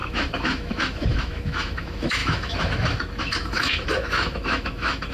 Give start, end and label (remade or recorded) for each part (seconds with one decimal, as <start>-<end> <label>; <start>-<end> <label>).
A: 0.0-5.1 remade